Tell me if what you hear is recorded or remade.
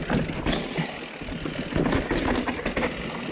recorded